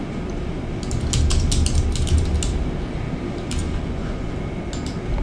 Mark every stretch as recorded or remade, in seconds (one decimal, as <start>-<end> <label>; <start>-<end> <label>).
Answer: 0.0-3.6 recorded; 3.6-4.3 remade; 4.3-5.2 recorded